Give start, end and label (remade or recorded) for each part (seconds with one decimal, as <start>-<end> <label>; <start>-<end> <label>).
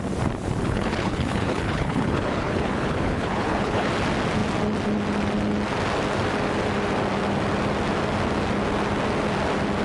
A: 0.0-0.6 recorded; 0.6-3.9 remade; 3.9-9.8 recorded